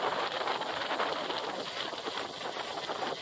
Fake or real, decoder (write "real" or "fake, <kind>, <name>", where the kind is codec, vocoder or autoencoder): real